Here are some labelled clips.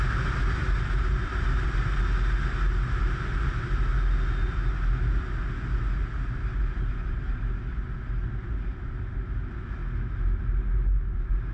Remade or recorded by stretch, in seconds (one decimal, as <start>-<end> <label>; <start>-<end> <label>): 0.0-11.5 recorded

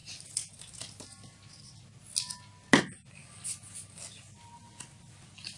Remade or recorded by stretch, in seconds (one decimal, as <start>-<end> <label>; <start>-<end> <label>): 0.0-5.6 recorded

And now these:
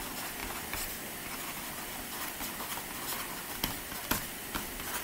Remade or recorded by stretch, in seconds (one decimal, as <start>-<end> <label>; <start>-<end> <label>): 0.0-5.0 recorded

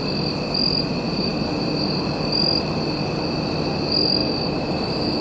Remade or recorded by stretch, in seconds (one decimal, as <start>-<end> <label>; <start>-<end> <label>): 0.0-5.2 recorded